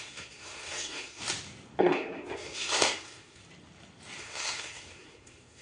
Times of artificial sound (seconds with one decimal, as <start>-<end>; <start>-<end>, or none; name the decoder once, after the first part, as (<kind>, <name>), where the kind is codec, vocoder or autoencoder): 0.0-1.2 (codec, SNAC); 1.8-3.4; 4.2-5.6